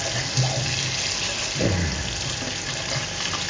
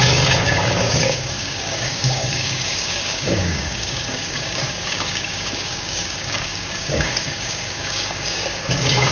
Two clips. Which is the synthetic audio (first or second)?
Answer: second